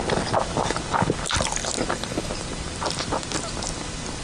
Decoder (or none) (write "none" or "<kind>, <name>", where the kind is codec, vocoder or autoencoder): none